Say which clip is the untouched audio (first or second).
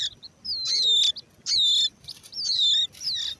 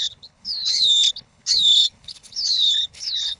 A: first